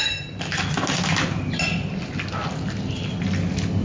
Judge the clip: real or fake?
real